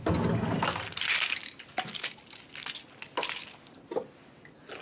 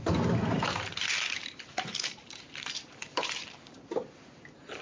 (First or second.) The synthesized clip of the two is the second